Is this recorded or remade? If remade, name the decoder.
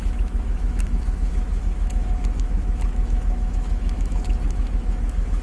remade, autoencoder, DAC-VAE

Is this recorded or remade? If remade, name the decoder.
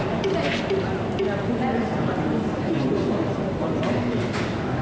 recorded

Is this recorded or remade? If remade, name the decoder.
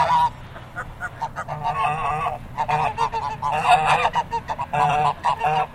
recorded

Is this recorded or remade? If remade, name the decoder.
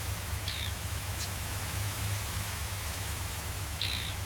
remade, autoencoder, DAC-VAE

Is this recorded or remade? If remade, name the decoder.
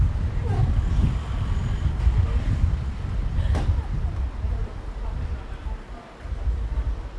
recorded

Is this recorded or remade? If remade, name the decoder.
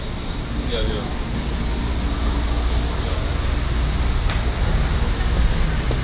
recorded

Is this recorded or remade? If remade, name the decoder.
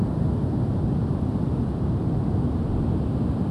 recorded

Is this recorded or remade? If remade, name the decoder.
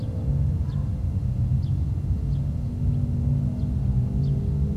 recorded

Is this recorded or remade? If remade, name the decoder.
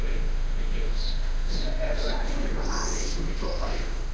remade, autoencoder, DAC-VAE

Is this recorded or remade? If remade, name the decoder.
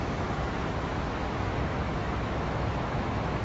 remade, autoencoder, DAC-VAE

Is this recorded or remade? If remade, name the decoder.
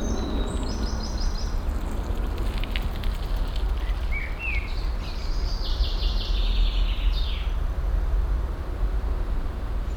recorded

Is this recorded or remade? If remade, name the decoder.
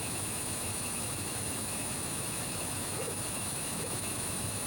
remade, autoencoder, DAC-VAE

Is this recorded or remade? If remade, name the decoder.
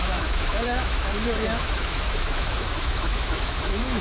remade, autoencoder, DAC-VAE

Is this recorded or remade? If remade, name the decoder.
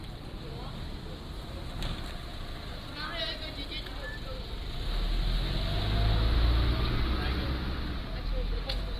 recorded